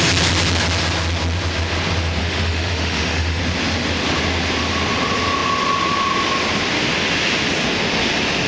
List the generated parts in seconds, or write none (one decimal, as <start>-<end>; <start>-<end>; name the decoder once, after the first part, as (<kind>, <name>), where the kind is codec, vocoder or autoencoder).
2.2-3.4 (autoencoder, DAC-VAE)

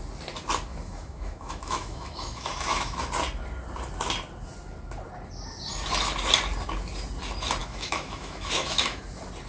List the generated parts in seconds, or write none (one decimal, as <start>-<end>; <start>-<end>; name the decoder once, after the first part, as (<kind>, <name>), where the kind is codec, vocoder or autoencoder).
0.7-3.1 (autoencoder, DAC-VAE); 7.6-9.0

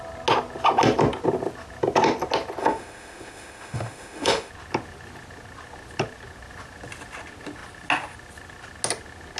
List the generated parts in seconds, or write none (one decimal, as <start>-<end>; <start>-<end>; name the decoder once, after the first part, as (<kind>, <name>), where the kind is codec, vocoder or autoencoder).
2.6-4.5 (autoencoder, DAC-VAE)